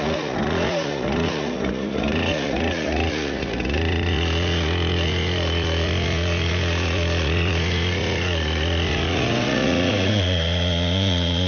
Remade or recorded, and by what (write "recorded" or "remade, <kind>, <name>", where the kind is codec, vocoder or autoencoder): remade, vocoder, Vocos